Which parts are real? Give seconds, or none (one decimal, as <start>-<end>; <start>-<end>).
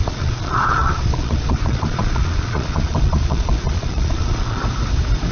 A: 4.6-5.3